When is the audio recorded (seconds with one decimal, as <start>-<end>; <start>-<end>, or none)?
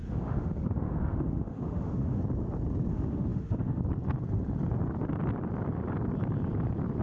2.2-2.9; 3.8-7.0